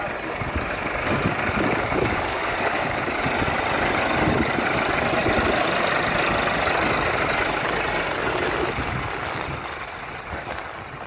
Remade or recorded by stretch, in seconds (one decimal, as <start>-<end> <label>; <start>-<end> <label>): 0.0-1.0 recorded; 1.0-3.2 remade; 3.2-11.1 recorded